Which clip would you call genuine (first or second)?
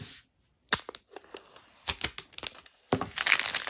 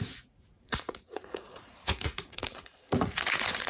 first